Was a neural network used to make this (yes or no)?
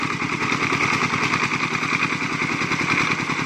no